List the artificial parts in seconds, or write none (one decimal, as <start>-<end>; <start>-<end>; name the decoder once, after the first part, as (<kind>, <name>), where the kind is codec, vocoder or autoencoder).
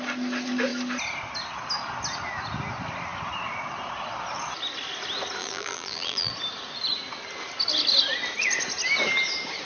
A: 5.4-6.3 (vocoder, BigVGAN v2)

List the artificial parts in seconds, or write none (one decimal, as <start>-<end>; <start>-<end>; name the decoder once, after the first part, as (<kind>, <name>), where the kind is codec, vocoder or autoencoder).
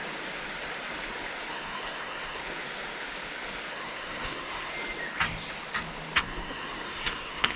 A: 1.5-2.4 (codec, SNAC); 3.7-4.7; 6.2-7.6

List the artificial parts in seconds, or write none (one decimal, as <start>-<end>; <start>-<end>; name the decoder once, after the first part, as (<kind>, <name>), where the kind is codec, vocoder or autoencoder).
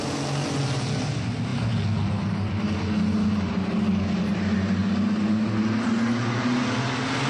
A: none